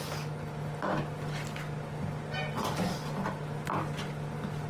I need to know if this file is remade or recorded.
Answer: recorded